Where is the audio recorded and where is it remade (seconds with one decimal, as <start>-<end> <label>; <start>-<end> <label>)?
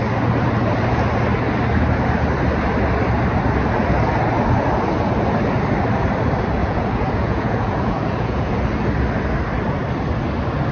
0.0-6.6 recorded; 6.6-8.5 remade; 8.5-10.7 recorded